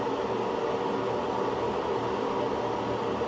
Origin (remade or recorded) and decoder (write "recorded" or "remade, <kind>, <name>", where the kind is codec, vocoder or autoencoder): recorded